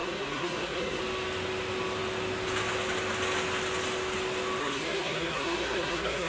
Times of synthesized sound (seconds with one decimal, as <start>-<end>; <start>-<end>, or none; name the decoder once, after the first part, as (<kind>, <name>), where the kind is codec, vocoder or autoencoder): 0.0-1.0 (codec, SNAC); 4.6-6.3